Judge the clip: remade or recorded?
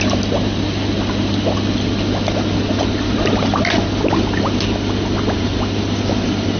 recorded